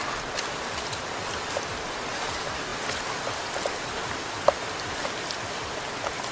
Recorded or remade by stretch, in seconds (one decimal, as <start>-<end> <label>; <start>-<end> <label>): 0.0-2.7 recorded; 2.7-5.2 remade; 5.2-6.3 recorded